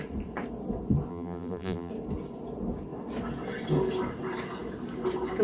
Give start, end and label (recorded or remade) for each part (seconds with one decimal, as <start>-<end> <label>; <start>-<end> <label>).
0.0-1.1 recorded; 1.1-1.9 remade; 1.9-5.4 recorded

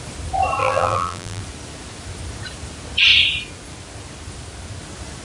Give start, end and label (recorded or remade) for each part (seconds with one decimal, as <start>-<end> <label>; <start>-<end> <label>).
0.0-0.6 recorded; 0.6-1.4 remade; 1.4-5.2 recorded

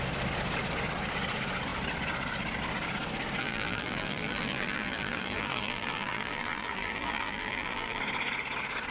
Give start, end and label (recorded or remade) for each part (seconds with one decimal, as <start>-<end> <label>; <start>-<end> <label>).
0.0-3.4 recorded; 3.4-8.0 remade; 8.0-8.9 recorded

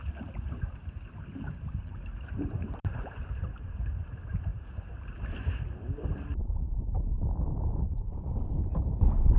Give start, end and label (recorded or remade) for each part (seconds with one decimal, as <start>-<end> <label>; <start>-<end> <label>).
0.0-9.4 remade